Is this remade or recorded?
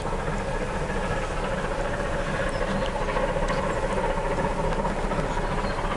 recorded